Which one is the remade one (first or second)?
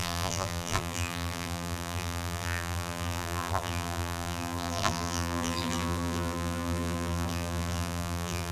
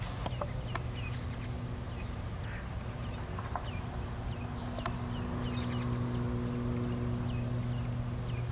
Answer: first